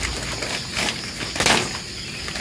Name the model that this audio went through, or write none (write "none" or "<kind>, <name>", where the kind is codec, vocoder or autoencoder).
none